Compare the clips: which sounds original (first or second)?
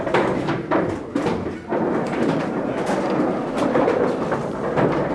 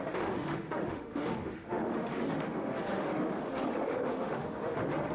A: first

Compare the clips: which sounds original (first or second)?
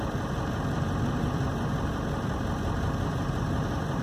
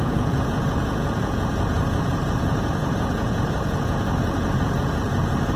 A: first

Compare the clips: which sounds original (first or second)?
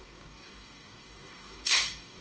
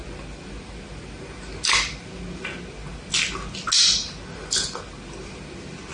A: second